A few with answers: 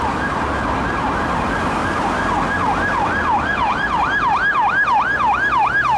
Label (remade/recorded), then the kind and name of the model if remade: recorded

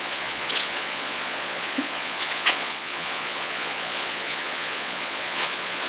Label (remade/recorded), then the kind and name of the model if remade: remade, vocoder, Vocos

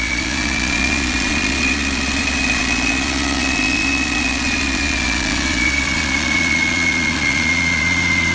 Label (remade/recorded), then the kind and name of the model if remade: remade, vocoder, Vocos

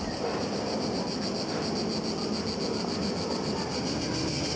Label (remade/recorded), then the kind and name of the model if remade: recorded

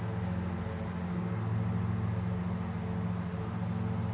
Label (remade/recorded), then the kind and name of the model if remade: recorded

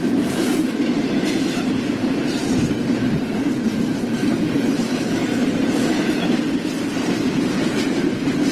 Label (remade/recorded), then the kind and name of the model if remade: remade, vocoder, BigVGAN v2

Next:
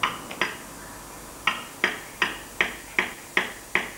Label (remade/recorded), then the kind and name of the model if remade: recorded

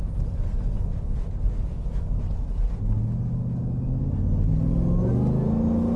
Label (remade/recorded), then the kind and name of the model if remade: recorded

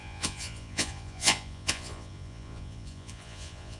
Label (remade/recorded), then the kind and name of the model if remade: remade, vocoder, Vocos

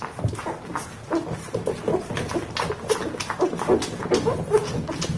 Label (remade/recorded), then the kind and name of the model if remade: recorded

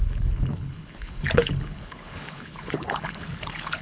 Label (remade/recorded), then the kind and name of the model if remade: remade, codec, HILCodec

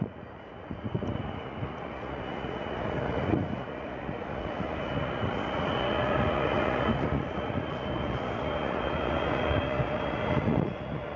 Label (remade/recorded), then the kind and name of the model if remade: remade, vocoder, Vocos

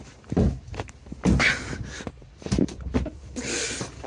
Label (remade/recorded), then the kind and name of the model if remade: recorded